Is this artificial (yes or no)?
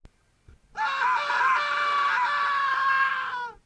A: no